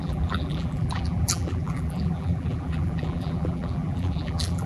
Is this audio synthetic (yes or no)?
yes